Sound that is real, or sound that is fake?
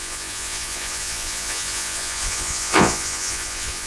fake